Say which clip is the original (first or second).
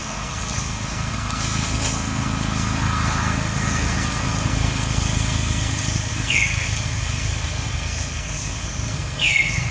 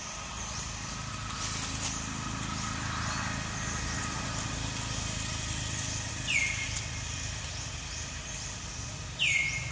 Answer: second